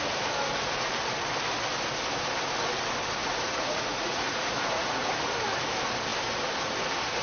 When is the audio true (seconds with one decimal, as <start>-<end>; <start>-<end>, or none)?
0.0-3.2; 5.1-7.2